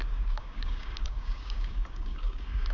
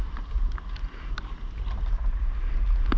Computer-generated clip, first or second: first